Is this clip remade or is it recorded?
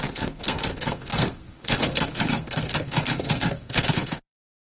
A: remade